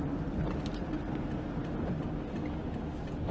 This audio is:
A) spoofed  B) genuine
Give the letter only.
B